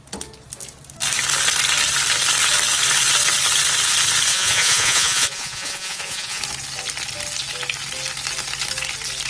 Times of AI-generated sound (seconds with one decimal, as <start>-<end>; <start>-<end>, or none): 4.3-6.4